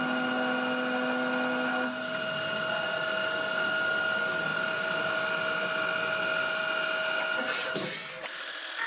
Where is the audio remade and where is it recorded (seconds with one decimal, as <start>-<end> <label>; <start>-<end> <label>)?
0.0-4.5 recorded; 4.5-5.1 remade; 5.1-8.9 recorded